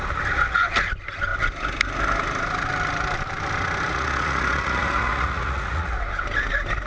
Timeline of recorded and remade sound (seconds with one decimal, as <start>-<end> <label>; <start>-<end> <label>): 0.0-3.9 recorded; 3.9-5.9 remade; 5.9-6.9 recorded